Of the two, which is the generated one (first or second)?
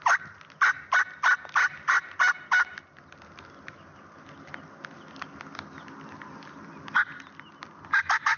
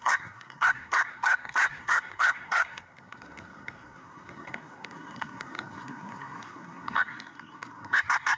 second